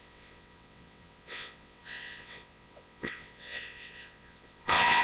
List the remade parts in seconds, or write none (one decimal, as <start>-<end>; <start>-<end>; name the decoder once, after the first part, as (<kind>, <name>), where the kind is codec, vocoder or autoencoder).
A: 0.0-5.0 (vocoder, WaveNeXt)